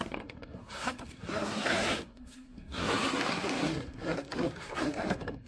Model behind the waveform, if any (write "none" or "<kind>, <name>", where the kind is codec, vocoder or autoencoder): codec, SNAC